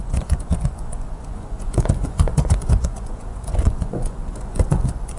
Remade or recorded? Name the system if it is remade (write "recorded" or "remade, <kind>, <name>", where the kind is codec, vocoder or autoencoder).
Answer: remade, vocoder, Vocos